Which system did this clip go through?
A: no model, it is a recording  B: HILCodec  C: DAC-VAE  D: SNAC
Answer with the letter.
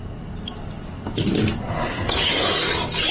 A